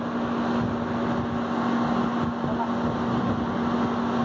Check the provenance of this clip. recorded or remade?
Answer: recorded